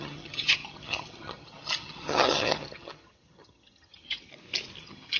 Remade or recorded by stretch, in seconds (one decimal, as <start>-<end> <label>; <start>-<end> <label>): 0.0-4.3 remade; 4.3-4.8 recorded; 4.8-5.2 remade